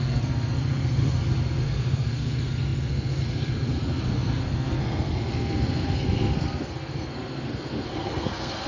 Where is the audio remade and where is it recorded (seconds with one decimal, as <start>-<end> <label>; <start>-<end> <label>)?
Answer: 0.0-1.0 remade; 1.0-1.6 recorded; 1.6-8.7 remade